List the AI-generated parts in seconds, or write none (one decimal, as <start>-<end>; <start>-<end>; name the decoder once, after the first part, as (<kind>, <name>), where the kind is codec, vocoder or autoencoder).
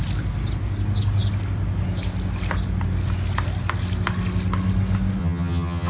5.2-5.9 (vocoder, HiFi-GAN)